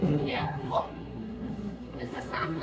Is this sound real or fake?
fake